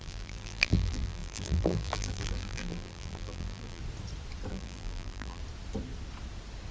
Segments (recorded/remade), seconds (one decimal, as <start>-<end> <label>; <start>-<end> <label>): 0.0-3.8 remade; 3.8-4.5 recorded; 4.5-5.4 remade; 5.4-6.7 recorded